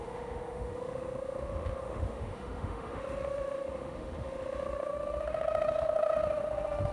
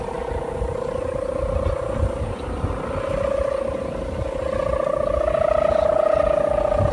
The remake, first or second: first